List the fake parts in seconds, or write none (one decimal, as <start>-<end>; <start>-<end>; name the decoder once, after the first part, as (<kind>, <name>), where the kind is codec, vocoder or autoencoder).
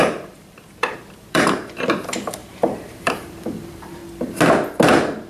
0.0-4.0 (vocoder, BigVGAN v2)